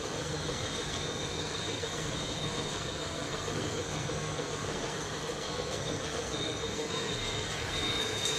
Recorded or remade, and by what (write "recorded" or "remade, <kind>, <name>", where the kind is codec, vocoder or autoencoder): remade, codec, SNAC